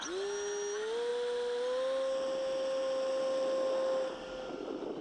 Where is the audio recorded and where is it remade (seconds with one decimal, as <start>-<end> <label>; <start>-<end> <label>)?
0.0-5.0 recorded